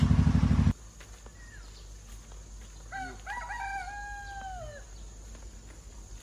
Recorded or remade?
recorded